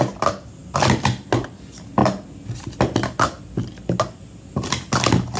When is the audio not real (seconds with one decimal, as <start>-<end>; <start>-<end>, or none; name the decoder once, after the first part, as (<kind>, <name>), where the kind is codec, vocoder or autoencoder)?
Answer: none